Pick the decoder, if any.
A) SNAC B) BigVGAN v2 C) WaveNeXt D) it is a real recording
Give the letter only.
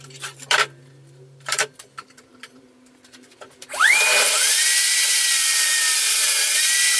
B